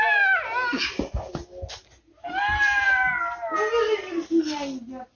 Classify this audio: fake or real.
real